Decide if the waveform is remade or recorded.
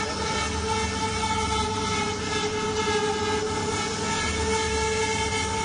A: recorded